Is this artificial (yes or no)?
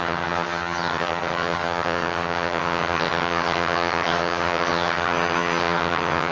yes